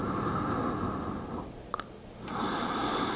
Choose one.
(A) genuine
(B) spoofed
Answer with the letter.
A